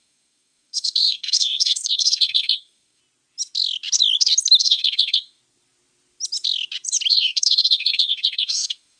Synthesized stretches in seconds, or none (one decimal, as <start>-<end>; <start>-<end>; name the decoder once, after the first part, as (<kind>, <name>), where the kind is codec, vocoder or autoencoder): 0.0-3.0 (codec, SNAC); 4.6-5.4; 7.1-9.0